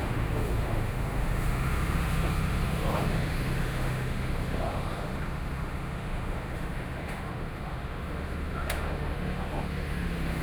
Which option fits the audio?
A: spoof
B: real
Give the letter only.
A